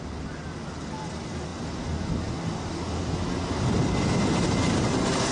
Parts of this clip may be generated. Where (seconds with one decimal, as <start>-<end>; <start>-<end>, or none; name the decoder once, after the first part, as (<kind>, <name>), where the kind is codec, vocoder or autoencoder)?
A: none

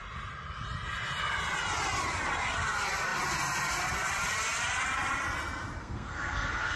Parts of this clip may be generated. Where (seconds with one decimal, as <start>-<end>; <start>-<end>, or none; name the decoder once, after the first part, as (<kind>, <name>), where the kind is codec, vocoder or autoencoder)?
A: 5.8-6.8 (codec, SNAC)

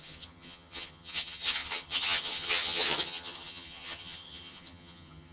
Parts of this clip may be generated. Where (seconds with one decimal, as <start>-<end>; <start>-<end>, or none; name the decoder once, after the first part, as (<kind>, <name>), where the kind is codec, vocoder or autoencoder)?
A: 0.0-5.3 (vocoder, HiFi-GAN)

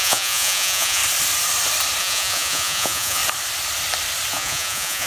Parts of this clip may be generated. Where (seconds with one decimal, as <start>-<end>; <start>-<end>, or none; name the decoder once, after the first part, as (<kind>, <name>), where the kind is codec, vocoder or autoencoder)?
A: 0.0-1.0 (vocoder, Vocos); 2.0-3.2; 4.3-5.1

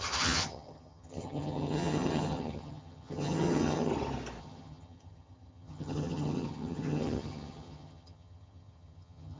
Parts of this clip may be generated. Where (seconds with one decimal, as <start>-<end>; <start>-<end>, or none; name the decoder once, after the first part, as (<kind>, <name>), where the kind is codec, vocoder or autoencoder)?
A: 0.0-3.9 (vocoder, HiFi-GAN); 4.4-9.4

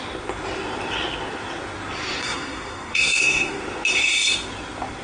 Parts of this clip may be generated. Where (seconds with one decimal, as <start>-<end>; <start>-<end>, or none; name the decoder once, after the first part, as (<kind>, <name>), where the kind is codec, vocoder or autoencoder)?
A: 2.2-3.6 (codec, SNAC)

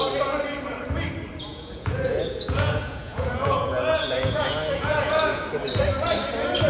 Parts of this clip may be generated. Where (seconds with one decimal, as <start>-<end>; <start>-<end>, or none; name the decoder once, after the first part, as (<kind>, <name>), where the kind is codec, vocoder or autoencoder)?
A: 1.5-5.5 (vocoder, Vocos)